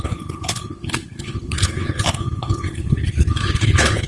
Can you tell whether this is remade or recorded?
remade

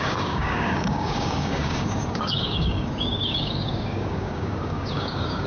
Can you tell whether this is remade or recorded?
remade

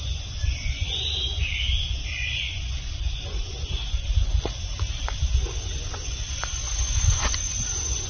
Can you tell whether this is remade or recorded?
remade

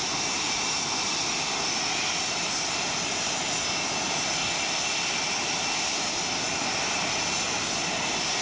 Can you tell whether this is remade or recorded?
recorded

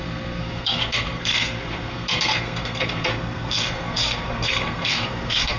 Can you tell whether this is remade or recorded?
remade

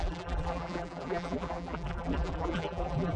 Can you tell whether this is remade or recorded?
remade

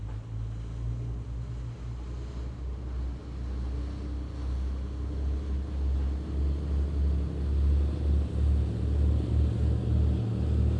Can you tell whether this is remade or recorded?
recorded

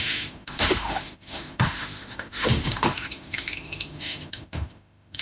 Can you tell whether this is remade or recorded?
remade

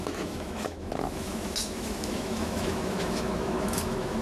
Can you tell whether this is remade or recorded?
remade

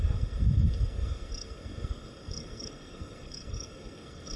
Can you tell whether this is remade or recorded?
remade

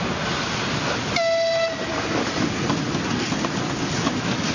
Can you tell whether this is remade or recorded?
recorded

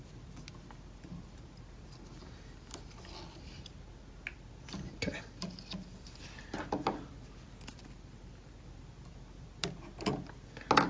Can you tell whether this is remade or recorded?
recorded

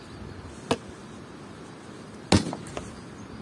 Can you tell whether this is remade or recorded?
recorded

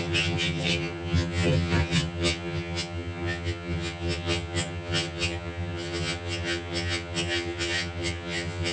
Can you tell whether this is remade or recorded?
remade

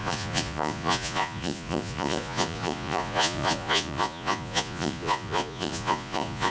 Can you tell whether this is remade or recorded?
remade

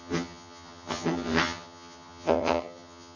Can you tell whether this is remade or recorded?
remade